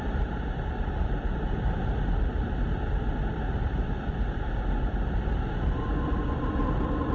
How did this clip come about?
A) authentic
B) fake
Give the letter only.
A